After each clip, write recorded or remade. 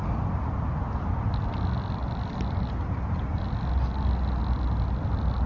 recorded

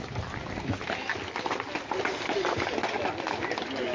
recorded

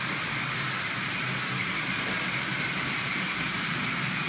remade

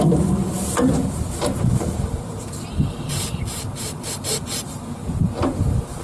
remade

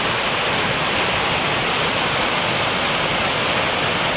recorded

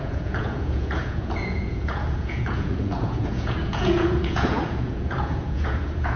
remade